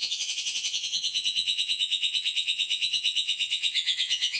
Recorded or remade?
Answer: remade